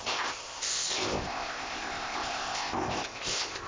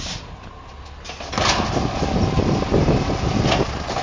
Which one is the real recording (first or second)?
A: second